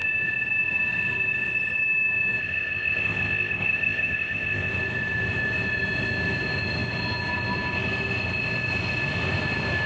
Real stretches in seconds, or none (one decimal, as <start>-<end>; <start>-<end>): 0.0-2.4; 4.7-9.9